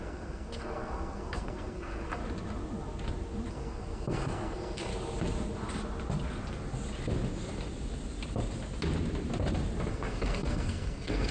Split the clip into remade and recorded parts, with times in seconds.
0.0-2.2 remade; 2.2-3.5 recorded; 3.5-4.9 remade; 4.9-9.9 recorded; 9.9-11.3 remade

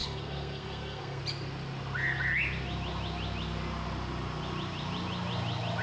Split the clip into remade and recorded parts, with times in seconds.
0.0-1.2 remade; 1.2-5.8 recorded

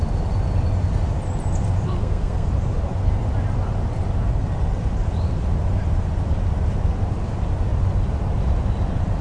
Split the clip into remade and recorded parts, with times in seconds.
0.0-2.0 recorded; 2.0-2.5 remade; 2.5-9.2 recorded

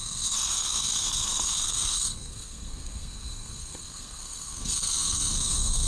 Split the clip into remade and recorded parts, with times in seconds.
0.0-5.9 remade

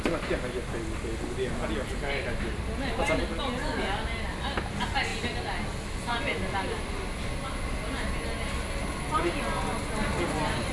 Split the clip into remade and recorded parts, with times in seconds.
0.0-10.7 recorded

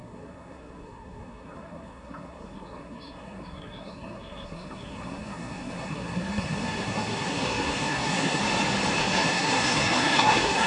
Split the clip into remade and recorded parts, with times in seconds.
0.0-8.4 remade; 8.4-9.0 recorded; 9.0-10.7 remade